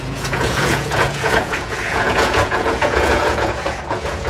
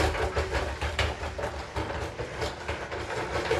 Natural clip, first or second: second